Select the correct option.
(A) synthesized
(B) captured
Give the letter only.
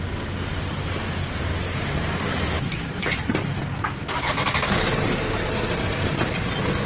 B